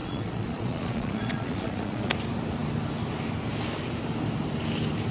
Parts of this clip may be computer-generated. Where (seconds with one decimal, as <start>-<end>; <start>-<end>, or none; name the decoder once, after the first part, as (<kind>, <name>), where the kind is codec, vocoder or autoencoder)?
0.0-2.1 (vocoder, Vocos)